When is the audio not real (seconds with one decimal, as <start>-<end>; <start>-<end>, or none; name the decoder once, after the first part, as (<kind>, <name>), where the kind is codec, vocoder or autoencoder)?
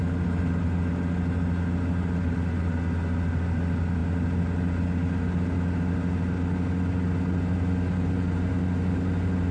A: none